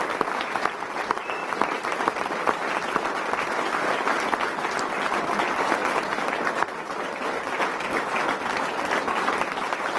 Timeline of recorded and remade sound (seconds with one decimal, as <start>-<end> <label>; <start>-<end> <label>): 0.0-10.0 recorded